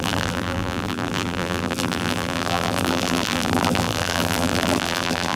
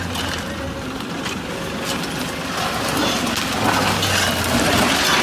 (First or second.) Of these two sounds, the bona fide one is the second